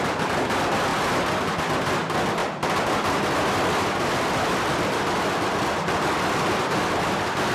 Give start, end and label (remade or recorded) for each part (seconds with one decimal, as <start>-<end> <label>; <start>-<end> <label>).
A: 0.0-7.5 recorded